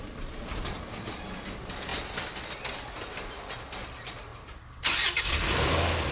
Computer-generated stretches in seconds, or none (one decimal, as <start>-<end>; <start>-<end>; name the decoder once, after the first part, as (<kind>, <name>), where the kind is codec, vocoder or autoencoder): none